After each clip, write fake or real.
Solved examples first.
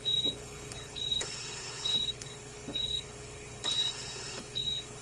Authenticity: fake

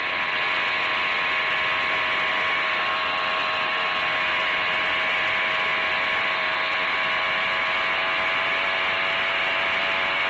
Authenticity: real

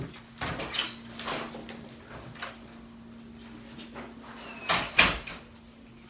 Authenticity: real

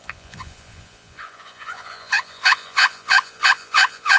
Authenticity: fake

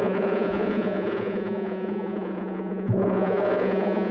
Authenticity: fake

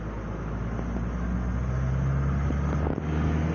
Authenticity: real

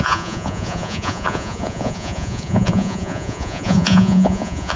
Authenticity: fake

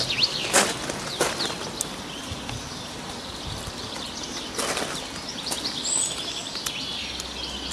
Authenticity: real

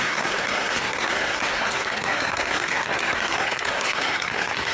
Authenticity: fake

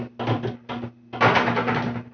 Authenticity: real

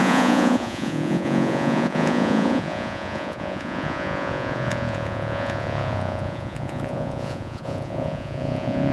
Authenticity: fake